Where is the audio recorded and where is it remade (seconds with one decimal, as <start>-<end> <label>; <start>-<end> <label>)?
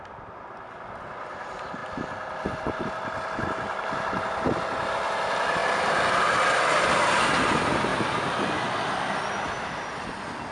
0.0-10.5 recorded